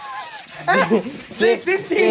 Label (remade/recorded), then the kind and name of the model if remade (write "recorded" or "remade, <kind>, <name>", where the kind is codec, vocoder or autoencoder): recorded